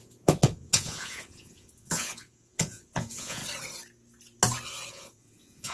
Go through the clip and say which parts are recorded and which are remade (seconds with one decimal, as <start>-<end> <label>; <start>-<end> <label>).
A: 0.0-3.4 remade; 3.4-4.9 recorded; 4.9-5.7 remade